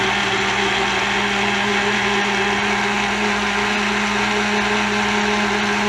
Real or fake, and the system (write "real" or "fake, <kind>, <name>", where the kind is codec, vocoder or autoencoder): real